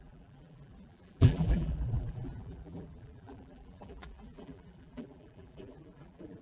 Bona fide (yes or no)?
no